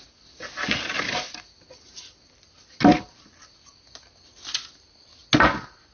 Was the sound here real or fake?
real